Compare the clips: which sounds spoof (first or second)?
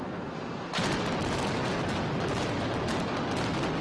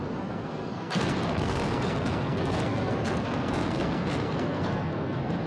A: second